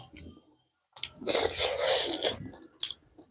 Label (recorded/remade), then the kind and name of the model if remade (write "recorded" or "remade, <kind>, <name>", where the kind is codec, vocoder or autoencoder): recorded